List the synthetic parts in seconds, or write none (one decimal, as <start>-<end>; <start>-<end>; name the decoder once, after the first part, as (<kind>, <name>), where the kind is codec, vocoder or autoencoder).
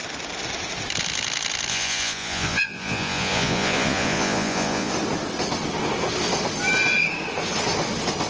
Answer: 1.7-4.9 (vocoder, Vocos)